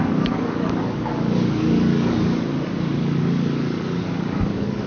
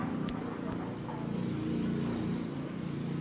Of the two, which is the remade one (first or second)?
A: first